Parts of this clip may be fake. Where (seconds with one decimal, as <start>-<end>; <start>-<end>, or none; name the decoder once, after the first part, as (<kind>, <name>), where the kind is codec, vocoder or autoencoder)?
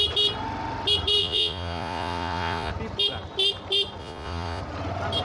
1.2-2.7 (vocoder, Vocos); 4.0-4.6